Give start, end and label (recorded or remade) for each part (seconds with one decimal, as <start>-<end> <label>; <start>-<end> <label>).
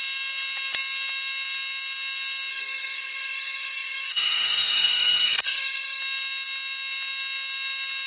0.0-2.5 recorded; 2.5-6.0 remade; 6.0-8.1 recorded